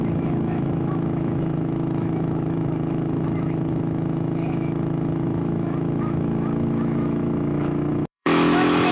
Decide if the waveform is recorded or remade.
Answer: remade